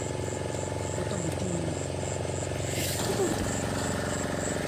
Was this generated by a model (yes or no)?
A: no